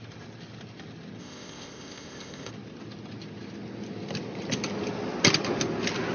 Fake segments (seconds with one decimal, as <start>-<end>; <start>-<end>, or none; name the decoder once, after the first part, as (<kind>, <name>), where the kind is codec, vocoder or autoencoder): 1.2-2.5 (codec, ZipCodec)